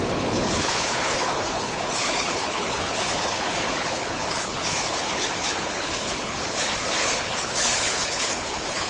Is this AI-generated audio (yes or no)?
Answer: yes